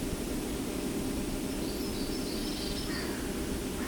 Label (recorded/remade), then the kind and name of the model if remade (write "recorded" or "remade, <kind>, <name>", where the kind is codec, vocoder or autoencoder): recorded